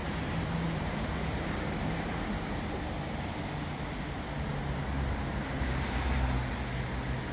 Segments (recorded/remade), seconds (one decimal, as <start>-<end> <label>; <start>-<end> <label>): 0.0-3.3 remade; 3.3-4.5 recorded; 4.5-6.5 remade; 6.5-7.3 recorded